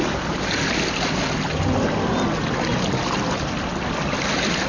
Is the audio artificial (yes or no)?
no